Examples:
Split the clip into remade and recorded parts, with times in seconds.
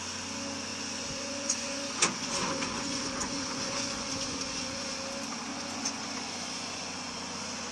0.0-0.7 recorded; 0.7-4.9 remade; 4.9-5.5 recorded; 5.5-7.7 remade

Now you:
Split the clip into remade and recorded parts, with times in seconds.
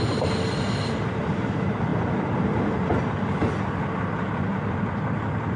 0.0-5.6 recorded